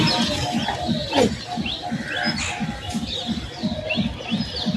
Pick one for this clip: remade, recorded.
recorded